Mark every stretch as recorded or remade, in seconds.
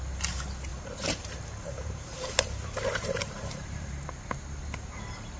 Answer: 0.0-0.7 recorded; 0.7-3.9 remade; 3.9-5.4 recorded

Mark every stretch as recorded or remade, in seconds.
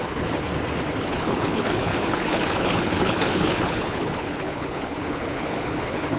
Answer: 0.0-0.5 remade; 0.5-1.0 recorded; 1.0-6.2 remade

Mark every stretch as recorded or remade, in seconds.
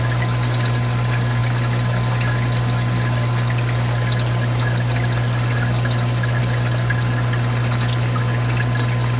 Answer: 0.0-9.2 recorded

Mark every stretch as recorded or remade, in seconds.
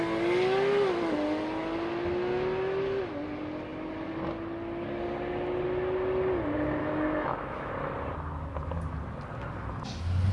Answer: 0.0-6.8 recorded; 6.8-7.7 remade; 7.7-10.3 recorded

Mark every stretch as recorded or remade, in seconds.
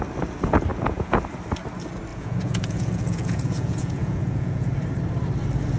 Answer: 0.0-0.7 recorded; 0.7-1.2 remade; 1.2-2.1 recorded; 2.1-4.7 remade; 4.7-5.8 recorded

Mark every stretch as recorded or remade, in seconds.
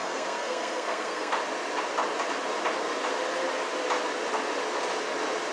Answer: 0.0-1.3 remade; 1.3-5.5 recorded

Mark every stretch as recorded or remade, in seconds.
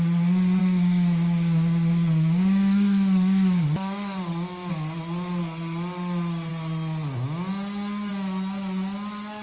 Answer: 0.0-0.6 recorded; 0.6-4.7 remade; 4.7-9.4 recorded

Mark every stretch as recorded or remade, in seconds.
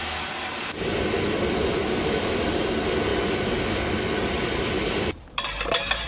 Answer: 0.0-6.1 recorded